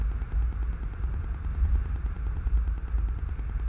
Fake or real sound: real